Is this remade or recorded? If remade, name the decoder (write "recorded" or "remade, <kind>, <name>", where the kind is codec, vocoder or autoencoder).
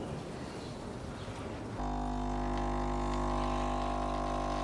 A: recorded